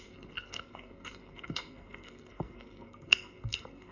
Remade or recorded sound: remade